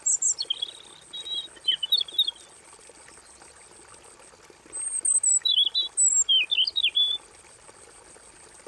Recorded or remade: recorded